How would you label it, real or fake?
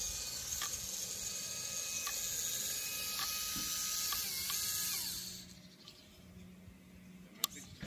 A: real